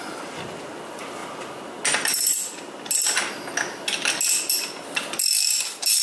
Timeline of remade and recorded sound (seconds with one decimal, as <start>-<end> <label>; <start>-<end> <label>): 0.0-6.0 recorded